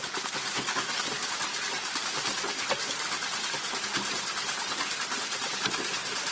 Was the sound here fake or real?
real